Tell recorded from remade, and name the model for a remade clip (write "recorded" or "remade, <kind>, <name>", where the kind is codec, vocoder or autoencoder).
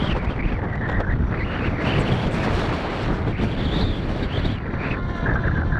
recorded